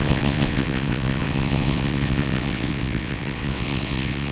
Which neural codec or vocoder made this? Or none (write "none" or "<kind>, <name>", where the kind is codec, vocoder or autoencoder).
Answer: vocoder, WaveNeXt